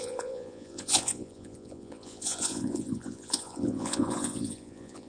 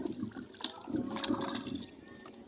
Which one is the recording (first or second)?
second